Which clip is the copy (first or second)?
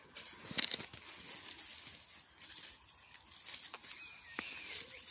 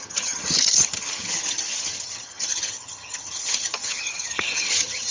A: second